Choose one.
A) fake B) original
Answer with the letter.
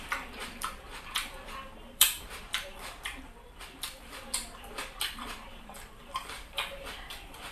A